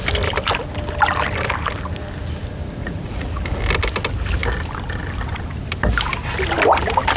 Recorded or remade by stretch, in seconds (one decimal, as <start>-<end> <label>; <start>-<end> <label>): 0.0-2.8 recorded; 2.8-3.4 remade; 3.4-7.2 recorded